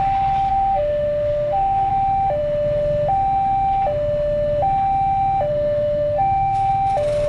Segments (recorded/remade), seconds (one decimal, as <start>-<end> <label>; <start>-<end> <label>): 0.0-0.5 recorded; 0.5-1.9 remade; 1.9-5.5 recorded; 5.5-6.7 remade; 6.7-7.3 recorded